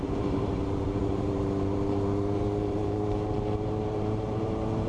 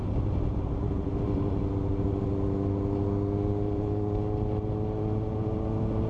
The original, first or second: second